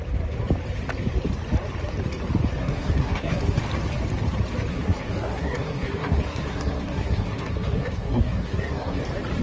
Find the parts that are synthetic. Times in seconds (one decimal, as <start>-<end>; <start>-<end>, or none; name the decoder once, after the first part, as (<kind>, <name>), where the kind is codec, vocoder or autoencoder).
2.6-3.6 (codec, SNAC); 4.7-9.0